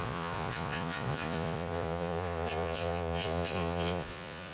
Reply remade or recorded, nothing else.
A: remade